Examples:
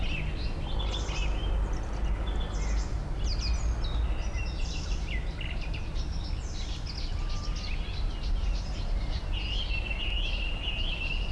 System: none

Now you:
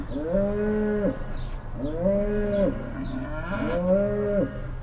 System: none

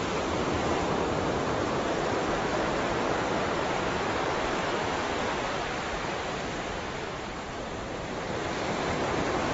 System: vocoder, BigVGAN v2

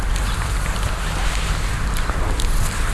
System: vocoder, BigVGAN v2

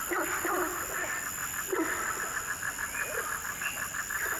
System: none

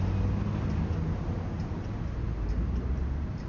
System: none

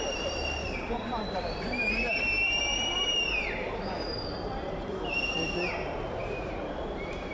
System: vocoder, BigVGAN v2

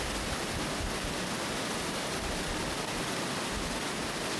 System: none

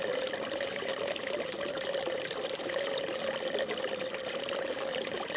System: vocoder, BigVGAN v2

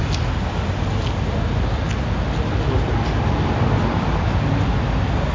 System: none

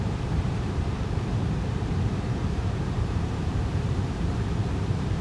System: vocoder, BigVGAN v2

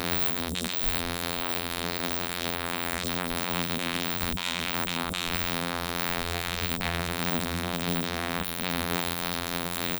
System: vocoder, BigVGAN v2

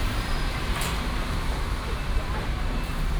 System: vocoder, BigVGAN v2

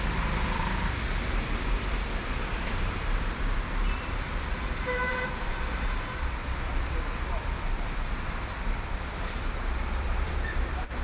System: vocoder, BigVGAN v2